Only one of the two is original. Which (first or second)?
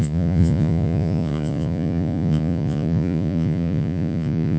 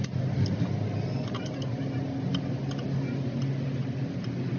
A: second